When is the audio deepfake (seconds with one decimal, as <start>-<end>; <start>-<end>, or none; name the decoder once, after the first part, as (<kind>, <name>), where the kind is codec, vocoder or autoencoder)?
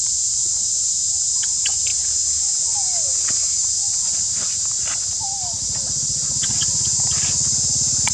none